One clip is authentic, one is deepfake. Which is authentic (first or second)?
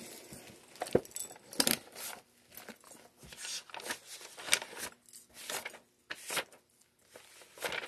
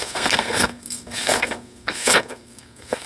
first